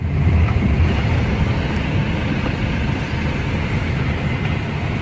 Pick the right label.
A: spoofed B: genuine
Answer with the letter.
B